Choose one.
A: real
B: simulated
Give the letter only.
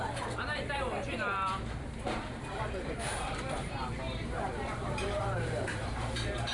B